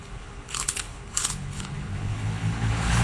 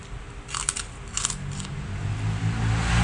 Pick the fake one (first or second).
first